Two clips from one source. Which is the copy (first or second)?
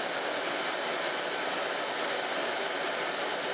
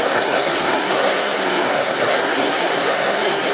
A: second